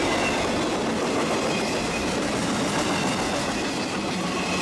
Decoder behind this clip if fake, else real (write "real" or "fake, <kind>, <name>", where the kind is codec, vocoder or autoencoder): real